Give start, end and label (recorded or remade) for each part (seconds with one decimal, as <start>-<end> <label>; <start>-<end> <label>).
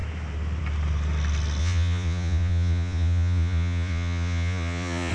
0.0-1.6 recorded; 1.6-5.1 remade